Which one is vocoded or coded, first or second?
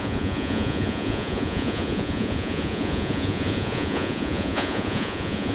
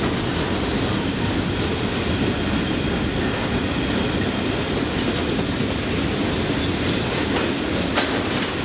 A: first